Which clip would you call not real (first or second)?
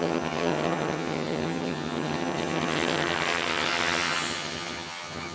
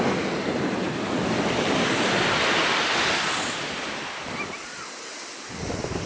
first